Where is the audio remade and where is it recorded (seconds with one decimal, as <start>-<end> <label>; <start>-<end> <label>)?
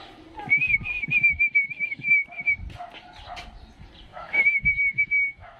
0.0-1.2 recorded; 1.2-2.1 remade; 2.1-4.1 recorded; 4.1-5.6 remade